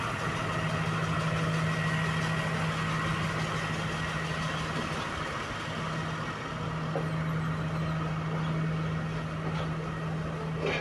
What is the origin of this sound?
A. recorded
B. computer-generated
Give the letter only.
A